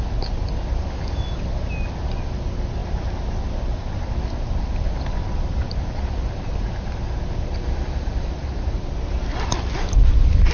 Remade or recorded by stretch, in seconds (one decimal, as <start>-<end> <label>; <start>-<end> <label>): 0.0-2.8 recorded; 2.8-6.0 remade; 6.0-8.4 recorded; 8.4-9.7 remade; 9.7-10.5 recorded